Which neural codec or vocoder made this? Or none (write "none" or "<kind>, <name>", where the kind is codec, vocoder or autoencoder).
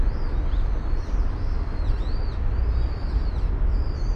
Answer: none